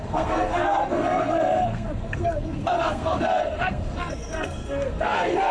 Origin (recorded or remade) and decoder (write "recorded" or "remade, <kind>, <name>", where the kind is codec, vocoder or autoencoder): remade, codec, SNAC